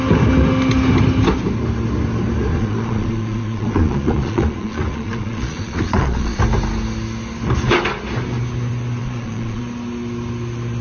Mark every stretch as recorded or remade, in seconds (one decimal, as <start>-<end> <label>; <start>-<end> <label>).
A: 0.0-2.5 recorded; 2.5-6.4 remade; 6.4-9.0 recorded; 9.0-9.6 remade; 9.6-10.8 recorded